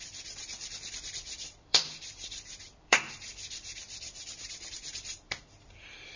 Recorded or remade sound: remade